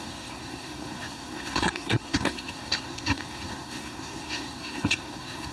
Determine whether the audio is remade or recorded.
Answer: remade